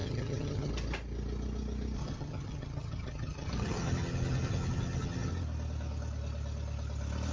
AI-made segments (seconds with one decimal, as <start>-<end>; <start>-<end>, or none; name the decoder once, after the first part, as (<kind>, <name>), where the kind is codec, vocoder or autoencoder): 0.0-0.7 (vocoder, HiFi-GAN); 2.0-5.3